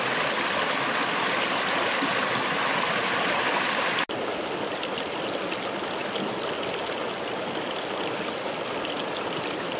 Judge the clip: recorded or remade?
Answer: recorded